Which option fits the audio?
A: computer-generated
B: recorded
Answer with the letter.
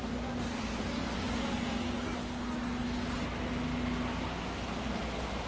B